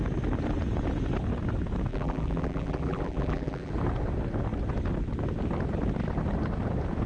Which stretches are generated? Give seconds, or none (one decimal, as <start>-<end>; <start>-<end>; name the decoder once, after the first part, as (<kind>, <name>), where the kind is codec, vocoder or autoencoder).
1.9-3.7 (vocoder, BigVGAN v2)

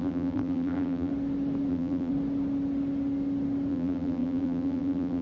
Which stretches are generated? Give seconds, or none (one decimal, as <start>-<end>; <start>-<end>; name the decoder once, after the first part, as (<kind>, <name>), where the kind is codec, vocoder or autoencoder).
0.0-1.1 (vocoder, BigVGAN v2); 1.7-2.1; 3.7-5.2